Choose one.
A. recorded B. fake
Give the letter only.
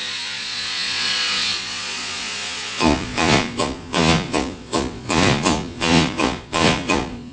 B